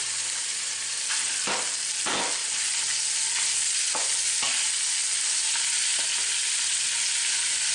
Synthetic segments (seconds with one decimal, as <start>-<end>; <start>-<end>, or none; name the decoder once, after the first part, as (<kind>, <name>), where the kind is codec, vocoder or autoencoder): 2.4-3.0 (vocoder, BigVGAN v2)